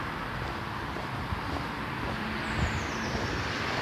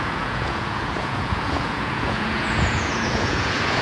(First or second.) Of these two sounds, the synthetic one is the second